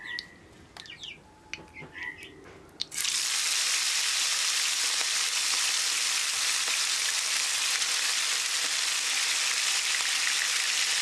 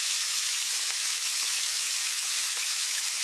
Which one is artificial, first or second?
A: second